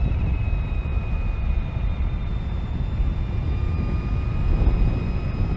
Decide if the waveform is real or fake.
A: real